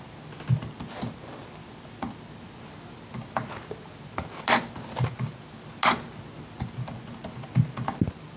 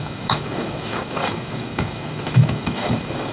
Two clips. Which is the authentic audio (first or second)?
first